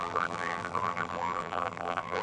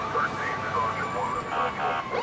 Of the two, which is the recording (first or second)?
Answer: second